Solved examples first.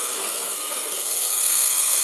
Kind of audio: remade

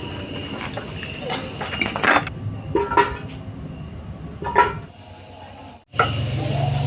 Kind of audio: recorded